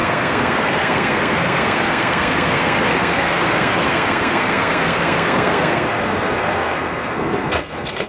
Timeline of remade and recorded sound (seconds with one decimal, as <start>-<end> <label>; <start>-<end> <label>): 0.0-8.1 remade